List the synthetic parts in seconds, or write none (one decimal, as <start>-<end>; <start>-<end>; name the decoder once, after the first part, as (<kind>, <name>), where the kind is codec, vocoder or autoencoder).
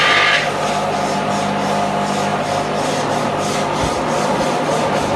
none